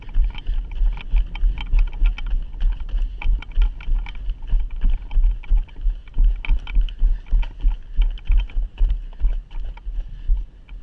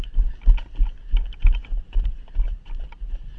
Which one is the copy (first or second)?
second